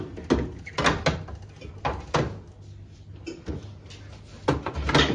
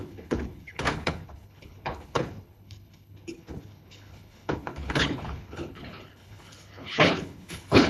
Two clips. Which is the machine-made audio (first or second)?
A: second